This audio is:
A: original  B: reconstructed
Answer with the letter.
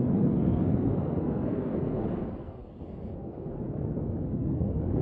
B